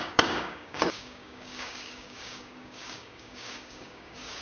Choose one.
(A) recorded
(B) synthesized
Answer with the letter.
B